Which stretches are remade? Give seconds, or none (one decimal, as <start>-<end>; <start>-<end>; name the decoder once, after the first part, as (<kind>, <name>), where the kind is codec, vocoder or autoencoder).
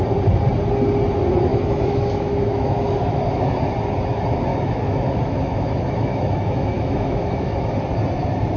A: 1.5-3.2 (autoencoder, DAC-VAE); 4.5-7.7